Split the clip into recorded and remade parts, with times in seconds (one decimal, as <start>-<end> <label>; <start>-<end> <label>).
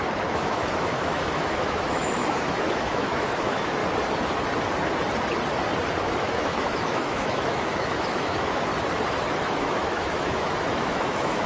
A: 0.0-3.8 remade; 3.8-6.0 recorded; 6.0-8.7 remade; 8.7-9.5 recorded; 9.5-11.5 remade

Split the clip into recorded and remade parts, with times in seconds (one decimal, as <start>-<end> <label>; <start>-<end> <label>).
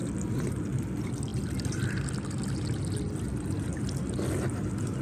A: 0.0-5.0 recorded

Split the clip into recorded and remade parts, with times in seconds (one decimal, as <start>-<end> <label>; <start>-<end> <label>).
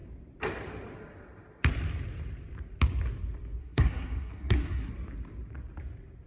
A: 0.0-3.6 recorded; 3.6-4.9 remade; 4.9-6.3 recorded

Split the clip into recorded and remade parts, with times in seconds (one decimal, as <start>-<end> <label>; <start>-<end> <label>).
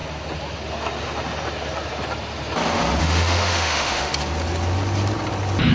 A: 0.0-3.0 recorded; 3.0-4.1 remade; 4.1-5.7 recorded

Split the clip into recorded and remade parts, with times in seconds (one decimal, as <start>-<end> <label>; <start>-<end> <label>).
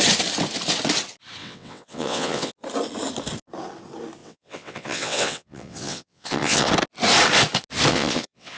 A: 0.0-1.4 recorded; 1.4-2.5 remade; 2.5-4.2 recorded; 4.2-6.7 remade; 6.7-7.9 recorded; 7.9-8.6 remade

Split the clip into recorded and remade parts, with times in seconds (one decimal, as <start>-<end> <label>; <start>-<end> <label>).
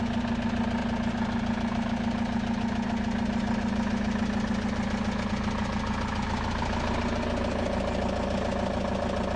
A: 0.0-9.4 recorded